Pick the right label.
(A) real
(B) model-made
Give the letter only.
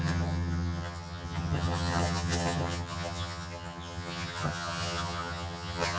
B